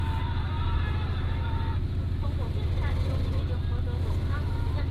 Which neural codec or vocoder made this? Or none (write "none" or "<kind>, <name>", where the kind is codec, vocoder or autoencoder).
none